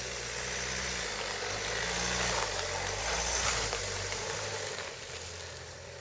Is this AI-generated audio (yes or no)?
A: no